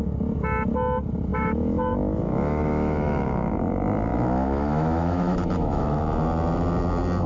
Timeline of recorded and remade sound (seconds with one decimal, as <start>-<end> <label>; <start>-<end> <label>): 0.0-1.3 recorded; 1.3-3.6 remade; 3.6-4.1 recorded; 4.1-6.0 remade; 6.0-7.3 recorded